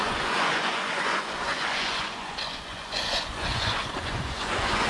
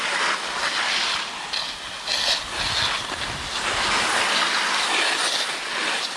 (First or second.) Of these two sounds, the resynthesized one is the first